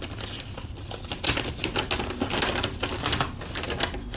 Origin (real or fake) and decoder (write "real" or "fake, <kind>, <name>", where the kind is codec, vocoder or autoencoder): real